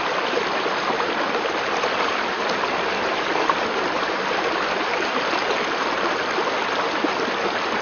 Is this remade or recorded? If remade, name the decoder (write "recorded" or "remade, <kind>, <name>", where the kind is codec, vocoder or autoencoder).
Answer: recorded